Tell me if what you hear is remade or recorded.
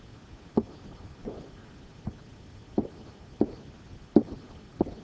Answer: recorded